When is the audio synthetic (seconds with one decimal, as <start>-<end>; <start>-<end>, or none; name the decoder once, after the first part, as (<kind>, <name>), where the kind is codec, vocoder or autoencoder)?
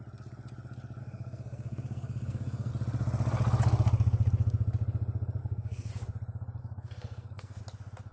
1.0-2.7 (codec, SNAC); 5.4-5.9; 6.6-7.6